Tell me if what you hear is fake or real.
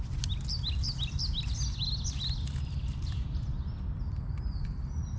real